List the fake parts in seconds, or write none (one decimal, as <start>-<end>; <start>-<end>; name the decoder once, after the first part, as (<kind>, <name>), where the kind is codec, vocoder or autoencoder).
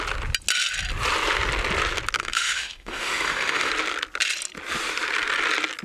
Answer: 2.2-3.7 (autoencoder, DAC-VAE)